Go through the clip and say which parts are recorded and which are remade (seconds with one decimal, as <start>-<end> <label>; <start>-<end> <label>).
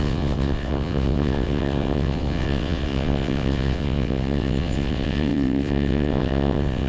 0.0-6.9 remade